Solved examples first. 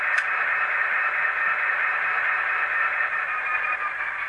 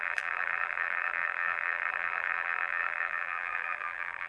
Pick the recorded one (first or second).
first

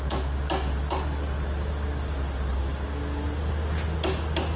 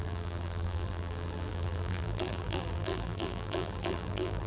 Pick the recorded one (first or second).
first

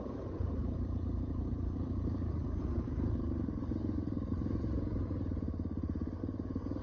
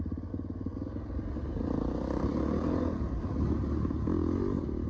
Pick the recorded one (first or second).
second